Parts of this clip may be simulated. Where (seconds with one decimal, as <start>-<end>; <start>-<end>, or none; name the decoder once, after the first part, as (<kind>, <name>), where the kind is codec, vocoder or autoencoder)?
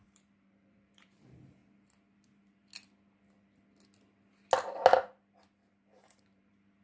0.0-1.6 (vocoder, BigVGAN v2); 5.7-6.8